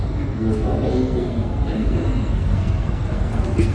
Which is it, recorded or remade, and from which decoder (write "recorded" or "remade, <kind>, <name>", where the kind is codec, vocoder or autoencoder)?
remade, codec, SNAC